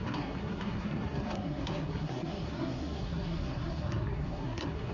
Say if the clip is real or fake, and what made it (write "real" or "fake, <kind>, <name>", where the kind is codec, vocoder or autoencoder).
fake, codec, SNAC